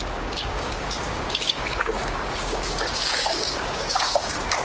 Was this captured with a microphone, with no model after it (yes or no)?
no